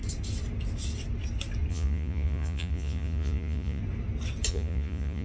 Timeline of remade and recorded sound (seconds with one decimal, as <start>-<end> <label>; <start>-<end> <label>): 0.0-1.7 recorded; 1.7-3.8 remade; 3.8-4.5 recorded; 4.5-5.2 remade